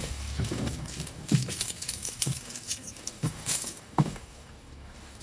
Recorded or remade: remade